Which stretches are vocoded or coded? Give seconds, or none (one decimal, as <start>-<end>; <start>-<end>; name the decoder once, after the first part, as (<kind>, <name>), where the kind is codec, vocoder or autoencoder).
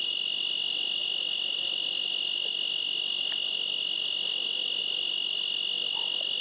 none